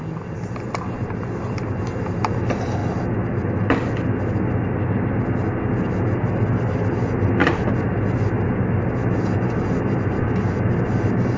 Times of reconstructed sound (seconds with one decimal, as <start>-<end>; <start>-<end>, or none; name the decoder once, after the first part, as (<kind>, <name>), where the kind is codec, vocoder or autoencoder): none